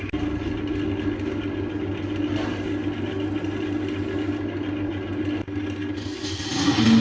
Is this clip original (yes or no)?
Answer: yes